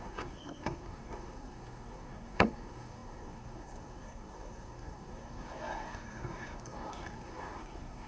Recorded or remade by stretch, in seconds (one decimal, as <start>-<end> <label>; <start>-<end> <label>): 0.0-8.1 remade